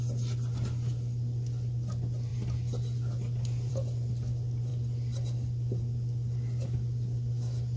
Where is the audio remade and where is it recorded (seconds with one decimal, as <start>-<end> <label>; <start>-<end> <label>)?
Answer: 0.0-7.8 recorded